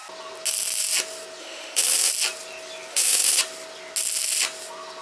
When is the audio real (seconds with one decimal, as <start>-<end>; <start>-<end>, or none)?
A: 0.0-1.4; 2.1-2.9; 3.4-5.0